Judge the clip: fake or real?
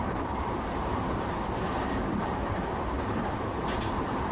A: fake